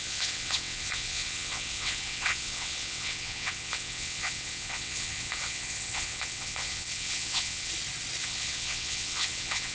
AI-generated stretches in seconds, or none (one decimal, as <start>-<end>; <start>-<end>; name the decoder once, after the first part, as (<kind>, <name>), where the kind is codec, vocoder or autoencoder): 0.0-7.7 (vocoder, WaveNeXt); 8.2-9.7